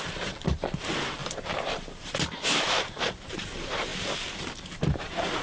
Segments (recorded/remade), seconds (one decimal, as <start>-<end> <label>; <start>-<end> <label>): 0.0-3.9 remade; 3.9-4.4 recorded; 4.4-5.4 remade